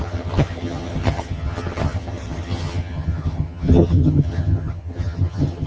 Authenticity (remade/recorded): remade